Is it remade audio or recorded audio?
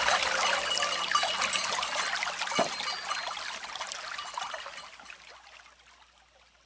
recorded